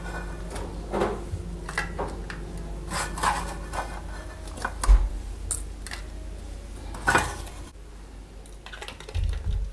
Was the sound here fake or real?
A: real